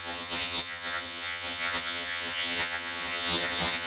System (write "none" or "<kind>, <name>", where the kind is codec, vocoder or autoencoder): vocoder, HiFi-GAN